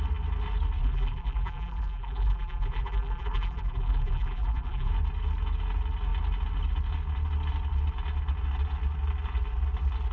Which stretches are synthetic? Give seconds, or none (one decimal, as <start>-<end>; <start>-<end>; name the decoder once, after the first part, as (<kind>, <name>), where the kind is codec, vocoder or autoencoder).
0.8-4.9 (vocoder, BigVGAN v2)